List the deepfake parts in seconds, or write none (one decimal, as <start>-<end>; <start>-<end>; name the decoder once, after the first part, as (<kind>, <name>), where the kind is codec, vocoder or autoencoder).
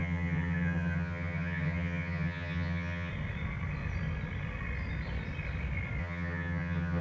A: 0.0-3.1 (vocoder, HiFi-GAN); 6.0-7.0